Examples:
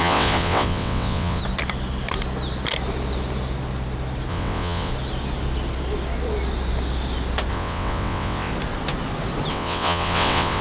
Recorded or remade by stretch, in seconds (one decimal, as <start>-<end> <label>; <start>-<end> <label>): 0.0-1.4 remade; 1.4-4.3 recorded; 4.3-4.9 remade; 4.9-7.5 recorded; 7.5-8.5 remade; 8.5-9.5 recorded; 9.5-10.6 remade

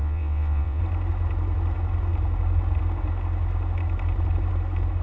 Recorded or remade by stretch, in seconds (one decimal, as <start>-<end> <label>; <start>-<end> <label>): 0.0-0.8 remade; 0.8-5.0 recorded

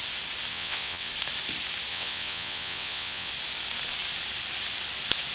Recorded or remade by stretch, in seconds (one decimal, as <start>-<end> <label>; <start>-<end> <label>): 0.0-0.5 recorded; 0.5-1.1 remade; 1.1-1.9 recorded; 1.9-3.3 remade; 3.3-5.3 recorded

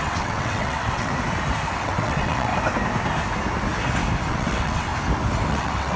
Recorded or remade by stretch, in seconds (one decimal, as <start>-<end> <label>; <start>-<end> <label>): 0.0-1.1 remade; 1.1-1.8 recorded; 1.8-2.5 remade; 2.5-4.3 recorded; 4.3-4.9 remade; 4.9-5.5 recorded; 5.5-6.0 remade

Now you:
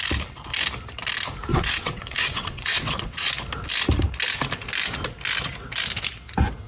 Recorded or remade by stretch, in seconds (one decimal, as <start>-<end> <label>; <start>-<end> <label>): 0.0-1.5 recorded; 1.5-3.3 remade; 3.3-6.7 recorded

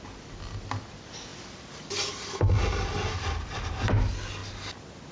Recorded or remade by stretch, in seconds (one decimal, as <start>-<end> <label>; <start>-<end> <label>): 0.0-5.1 recorded

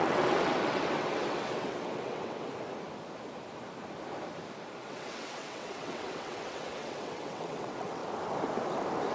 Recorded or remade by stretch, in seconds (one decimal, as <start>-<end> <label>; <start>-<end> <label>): 0.0-2.5 remade; 2.5-4.8 recorded; 4.8-8.0 remade; 8.0-9.1 recorded